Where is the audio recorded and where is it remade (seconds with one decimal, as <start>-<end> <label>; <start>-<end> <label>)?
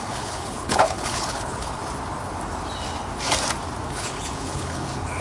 0.0-1.8 remade; 1.8-3.9 recorded; 3.9-5.2 remade